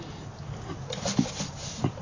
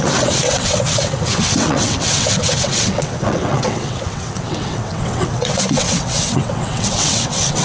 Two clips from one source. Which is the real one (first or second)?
first